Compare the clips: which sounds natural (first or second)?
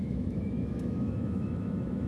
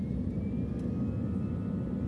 second